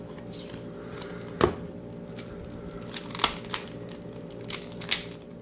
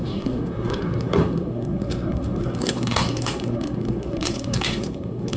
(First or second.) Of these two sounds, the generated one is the second